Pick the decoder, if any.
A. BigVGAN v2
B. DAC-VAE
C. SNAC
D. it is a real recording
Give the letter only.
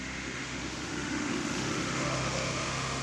B